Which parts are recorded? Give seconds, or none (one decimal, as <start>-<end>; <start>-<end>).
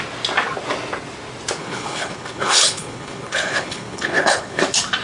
0.0-1.6; 4.6-5.0